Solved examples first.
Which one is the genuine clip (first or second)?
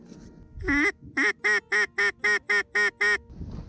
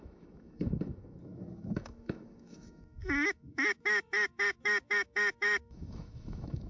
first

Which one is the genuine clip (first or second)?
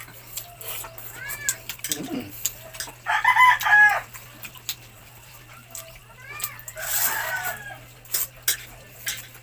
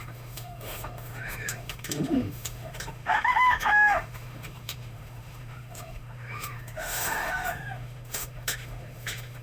first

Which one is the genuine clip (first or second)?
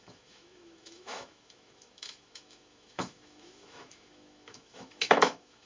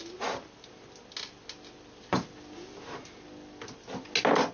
second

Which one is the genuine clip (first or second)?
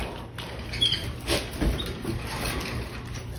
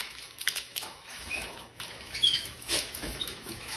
first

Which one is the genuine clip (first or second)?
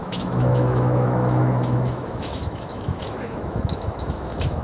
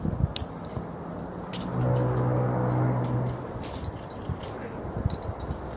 second